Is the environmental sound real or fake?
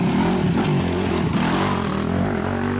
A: real